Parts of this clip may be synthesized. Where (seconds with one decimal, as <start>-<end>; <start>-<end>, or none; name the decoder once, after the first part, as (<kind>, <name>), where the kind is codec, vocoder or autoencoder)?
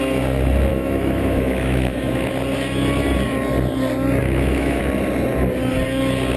0.7-2.3 (autoencoder, DAC-VAE); 4.2-4.8